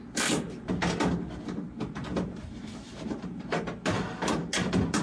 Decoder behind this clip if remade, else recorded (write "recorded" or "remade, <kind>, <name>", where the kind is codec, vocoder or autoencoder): recorded